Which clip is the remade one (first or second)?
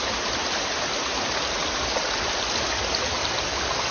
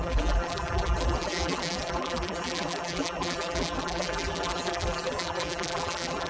second